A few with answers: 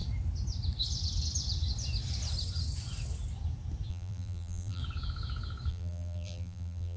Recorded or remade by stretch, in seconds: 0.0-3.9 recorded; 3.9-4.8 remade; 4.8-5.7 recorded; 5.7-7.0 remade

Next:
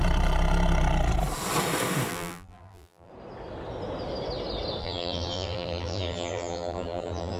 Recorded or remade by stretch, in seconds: 0.0-2.1 recorded; 2.1-3.1 remade; 3.1-4.8 recorded; 4.8-7.4 remade

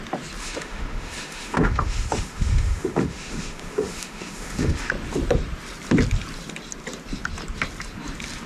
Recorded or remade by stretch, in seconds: 0.0-0.4 recorded; 0.4-4.9 remade; 4.9-8.5 recorded

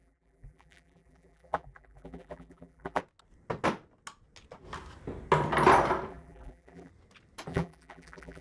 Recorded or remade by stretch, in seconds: 0.0-3.0 remade; 3.0-6.1 recorded; 6.1-6.9 remade; 6.9-7.5 recorded; 7.5-8.4 remade

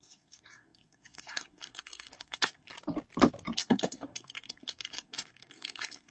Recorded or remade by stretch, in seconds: 0.0-2.7 remade; 2.7-3.6 recorded; 3.6-6.1 remade